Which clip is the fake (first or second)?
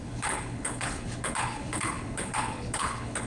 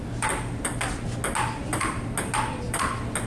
first